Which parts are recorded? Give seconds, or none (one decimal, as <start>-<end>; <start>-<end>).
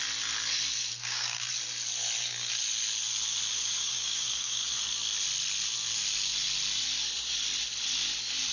0.0-1.0; 1.5-3.6; 4.7-8.5